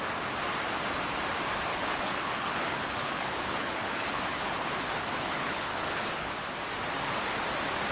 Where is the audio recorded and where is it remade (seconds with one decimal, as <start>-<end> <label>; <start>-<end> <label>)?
0.0-1.7 recorded; 1.7-6.4 remade; 6.4-7.9 recorded